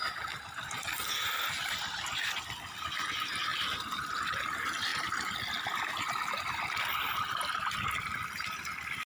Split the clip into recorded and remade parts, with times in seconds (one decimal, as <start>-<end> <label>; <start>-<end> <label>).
0.0-9.1 recorded